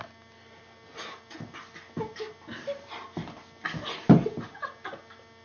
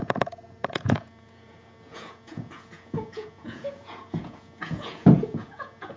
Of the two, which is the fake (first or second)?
second